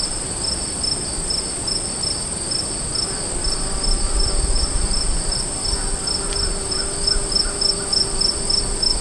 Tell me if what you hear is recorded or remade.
recorded